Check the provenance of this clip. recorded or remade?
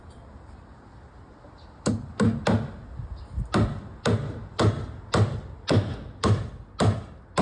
recorded